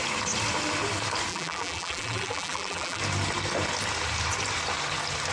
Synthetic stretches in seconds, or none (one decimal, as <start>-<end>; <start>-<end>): 1.3-3.0